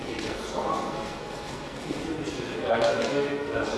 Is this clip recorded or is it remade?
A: remade